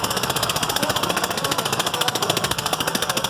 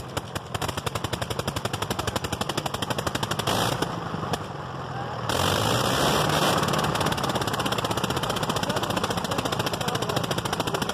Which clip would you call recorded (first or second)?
second